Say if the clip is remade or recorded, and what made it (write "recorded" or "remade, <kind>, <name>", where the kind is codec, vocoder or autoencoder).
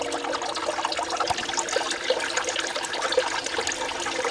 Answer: recorded